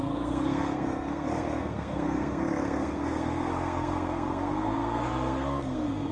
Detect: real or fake fake